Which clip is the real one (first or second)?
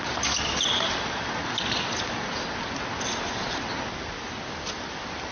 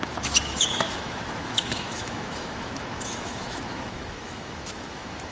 first